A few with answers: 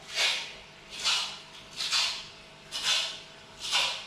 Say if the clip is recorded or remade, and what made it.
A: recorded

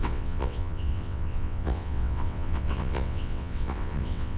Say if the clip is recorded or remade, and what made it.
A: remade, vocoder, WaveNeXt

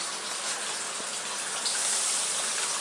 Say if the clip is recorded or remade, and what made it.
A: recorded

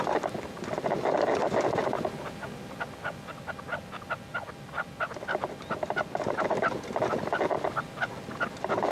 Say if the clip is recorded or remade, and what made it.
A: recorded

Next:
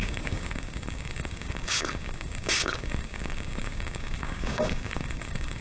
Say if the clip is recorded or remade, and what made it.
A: remade, codec, DAC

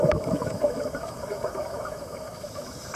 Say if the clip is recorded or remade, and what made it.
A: remade, autoencoder, DAC-VAE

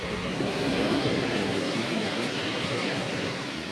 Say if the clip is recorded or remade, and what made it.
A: remade, codec, SNAC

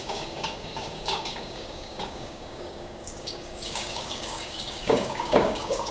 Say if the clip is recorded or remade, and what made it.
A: remade, codec, DAC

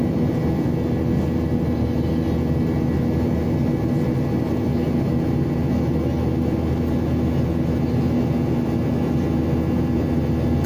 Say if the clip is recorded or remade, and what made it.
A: recorded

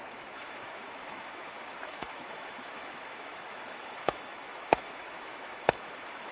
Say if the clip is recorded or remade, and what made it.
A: remade, autoencoder, DAC-VAE